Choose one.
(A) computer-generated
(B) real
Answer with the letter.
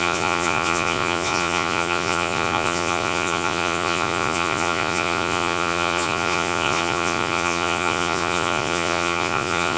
A